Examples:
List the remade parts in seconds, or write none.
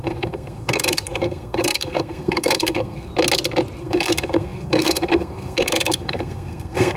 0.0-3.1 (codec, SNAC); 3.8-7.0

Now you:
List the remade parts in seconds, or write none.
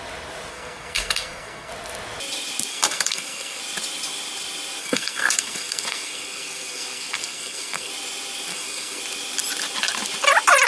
0.5-1.7 (codec, SNAC); 2.7-3.6; 4.8-7.9; 8.5-9.0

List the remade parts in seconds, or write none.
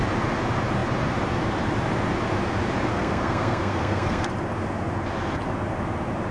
2.9-4.3 (codec, SNAC)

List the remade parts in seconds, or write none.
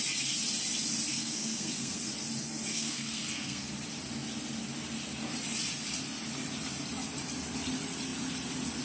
1.1-2.1 (codec, SNAC); 2.7-3.7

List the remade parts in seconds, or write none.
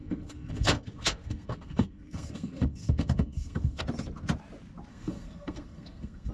0.0-3.8 (codec, SNAC); 4.9-6.3